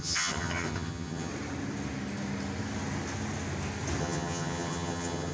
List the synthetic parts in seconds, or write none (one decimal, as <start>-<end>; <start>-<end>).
0.0-1.3; 4.0-5.3